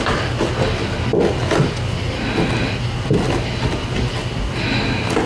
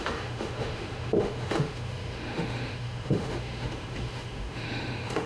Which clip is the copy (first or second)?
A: second